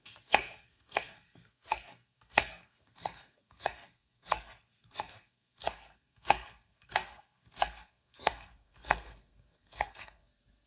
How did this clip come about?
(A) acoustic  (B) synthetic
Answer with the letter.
B